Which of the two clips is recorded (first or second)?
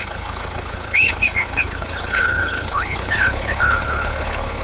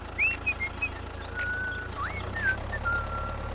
second